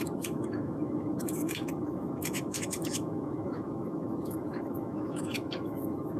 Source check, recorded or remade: remade